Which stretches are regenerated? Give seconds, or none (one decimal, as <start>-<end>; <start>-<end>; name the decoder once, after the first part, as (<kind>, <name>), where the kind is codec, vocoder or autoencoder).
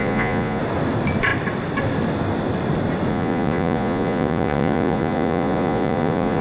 0.0-0.6 (vocoder, Vocos); 3.1-6.4